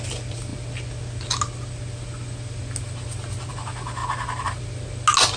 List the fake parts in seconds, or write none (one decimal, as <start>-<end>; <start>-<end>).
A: none

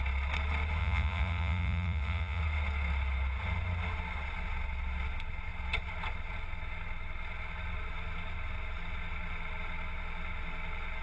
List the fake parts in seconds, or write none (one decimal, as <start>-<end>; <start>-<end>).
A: 0.8-2.4

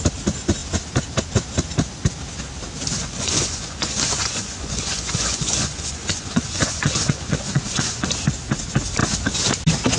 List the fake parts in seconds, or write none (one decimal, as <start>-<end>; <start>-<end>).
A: 3.0-8.1

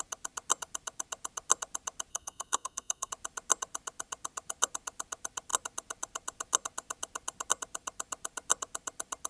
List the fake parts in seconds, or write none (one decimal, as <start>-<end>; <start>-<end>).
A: 2.1-3.1

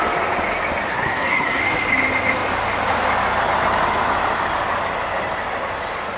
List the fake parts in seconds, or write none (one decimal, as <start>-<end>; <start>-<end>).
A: 0.9-1.6